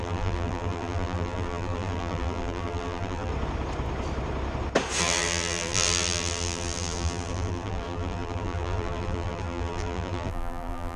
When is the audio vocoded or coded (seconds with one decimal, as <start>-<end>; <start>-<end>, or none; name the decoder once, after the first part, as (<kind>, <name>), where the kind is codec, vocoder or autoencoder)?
0.0-3.3 (vocoder, BigVGAN v2); 5.0-11.0